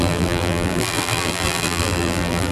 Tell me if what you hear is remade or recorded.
remade